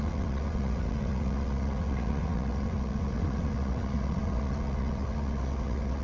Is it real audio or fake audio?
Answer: fake